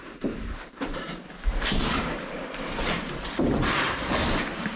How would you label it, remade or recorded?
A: remade